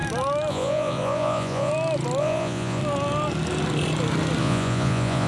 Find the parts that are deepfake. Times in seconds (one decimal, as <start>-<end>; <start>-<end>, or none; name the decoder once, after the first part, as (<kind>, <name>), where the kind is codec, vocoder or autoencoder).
0.5-1.7 (vocoder, Vocos); 2.2-2.8; 4.4-5.3